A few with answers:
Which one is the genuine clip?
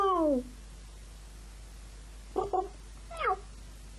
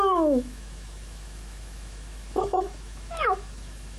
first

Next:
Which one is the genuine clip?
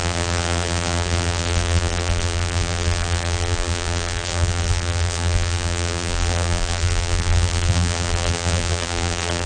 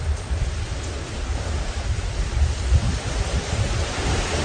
second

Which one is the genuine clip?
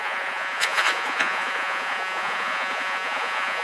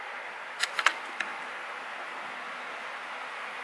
second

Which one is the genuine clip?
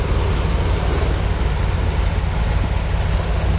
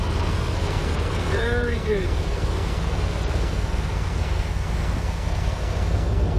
first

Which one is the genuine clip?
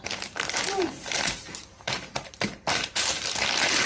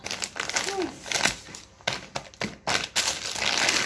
second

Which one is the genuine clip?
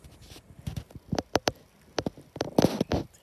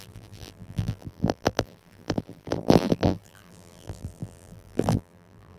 first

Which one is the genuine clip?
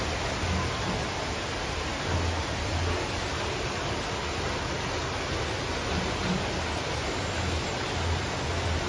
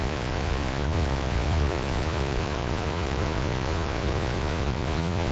first